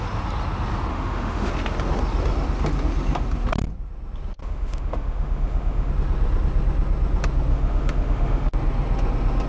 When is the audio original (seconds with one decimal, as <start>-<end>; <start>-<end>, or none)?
0.0-0.9; 1.5-4.4; 5.9-7.5; 8.5-9.5